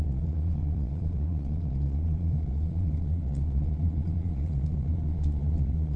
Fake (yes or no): yes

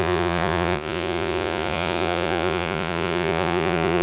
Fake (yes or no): yes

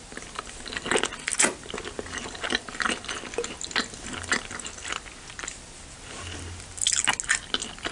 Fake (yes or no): no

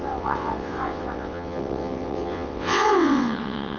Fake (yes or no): yes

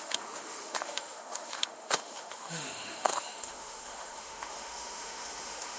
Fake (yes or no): yes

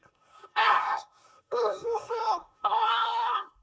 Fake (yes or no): yes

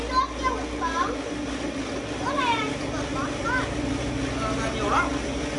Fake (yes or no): no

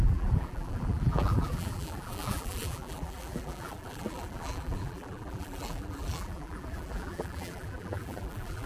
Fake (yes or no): yes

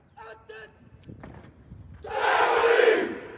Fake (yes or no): no